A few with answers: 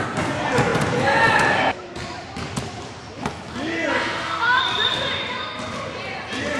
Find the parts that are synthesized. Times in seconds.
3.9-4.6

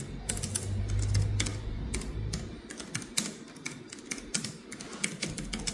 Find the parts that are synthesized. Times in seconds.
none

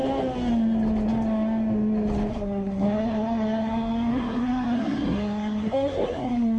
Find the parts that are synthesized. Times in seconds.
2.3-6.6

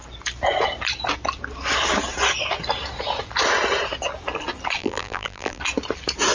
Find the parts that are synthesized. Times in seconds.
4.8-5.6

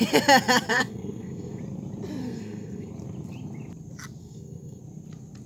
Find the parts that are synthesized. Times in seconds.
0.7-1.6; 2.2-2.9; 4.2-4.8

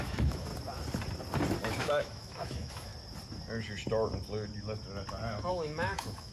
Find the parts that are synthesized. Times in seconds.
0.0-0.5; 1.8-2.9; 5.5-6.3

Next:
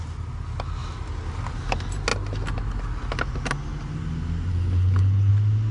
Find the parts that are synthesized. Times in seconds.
4.5-5.3